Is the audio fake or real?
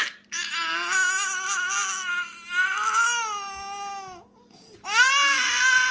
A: real